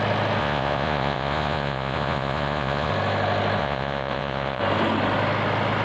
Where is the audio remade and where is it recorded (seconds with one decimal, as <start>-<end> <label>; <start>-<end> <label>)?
0.0-0.4 recorded; 0.4-2.9 remade; 2.9-3.6 recorded; 3.6-4.6 remade; 4.6-5.8 recorded